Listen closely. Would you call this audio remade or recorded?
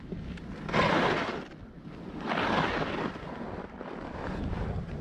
recorded